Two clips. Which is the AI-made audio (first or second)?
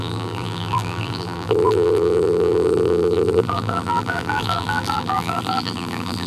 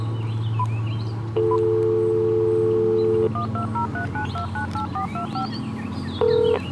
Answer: first